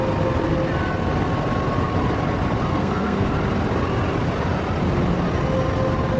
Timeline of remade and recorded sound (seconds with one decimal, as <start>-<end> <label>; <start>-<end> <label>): 0.0-2.7 recorded; 2.7-3.3 remade; 3.3-6.2 recorded